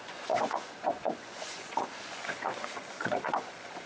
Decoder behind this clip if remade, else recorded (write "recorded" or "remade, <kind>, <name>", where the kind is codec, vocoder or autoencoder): remade, vocoder, Vocos